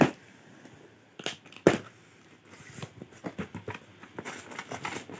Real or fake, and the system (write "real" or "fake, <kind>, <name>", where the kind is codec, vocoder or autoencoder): real